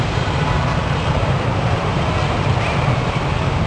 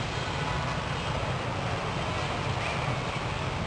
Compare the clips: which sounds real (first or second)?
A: second